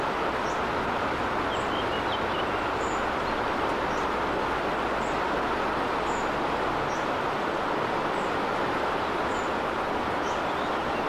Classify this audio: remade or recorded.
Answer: recorded